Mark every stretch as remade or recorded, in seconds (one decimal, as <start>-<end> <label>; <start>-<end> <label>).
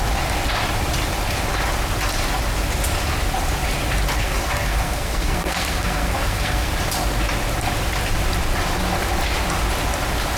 0.0-4.2 recorded; 4.2-6.7 remade; 6.7-10.4 recorded